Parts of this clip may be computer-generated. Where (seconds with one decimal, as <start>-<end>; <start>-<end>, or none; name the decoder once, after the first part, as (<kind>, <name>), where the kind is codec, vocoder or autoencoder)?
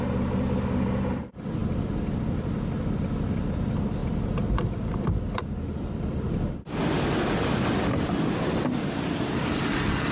none